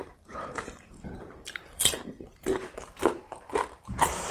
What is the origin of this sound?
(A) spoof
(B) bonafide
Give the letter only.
A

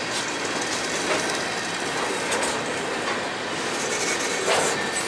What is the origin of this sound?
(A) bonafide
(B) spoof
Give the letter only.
A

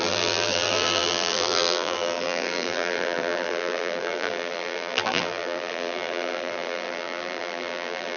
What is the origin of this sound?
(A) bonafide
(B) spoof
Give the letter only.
B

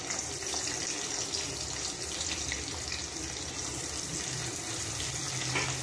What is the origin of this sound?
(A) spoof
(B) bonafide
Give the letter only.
B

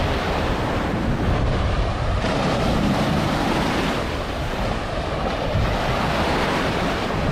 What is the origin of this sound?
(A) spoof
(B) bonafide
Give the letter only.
A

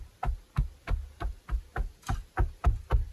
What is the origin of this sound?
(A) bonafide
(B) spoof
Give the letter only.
A